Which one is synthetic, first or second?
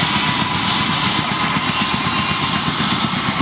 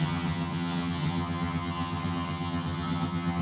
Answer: second